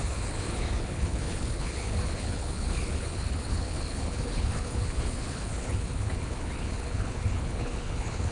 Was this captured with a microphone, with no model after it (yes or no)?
no